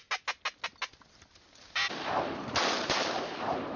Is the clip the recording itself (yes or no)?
yes